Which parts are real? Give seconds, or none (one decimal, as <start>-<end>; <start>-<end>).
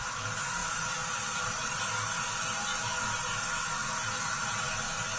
0.0-5.2